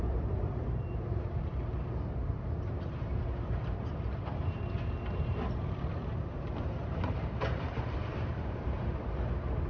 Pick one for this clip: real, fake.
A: fake